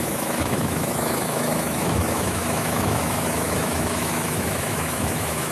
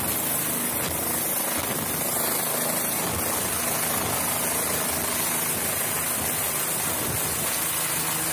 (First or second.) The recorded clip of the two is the second